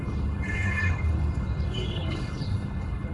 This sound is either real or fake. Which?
fake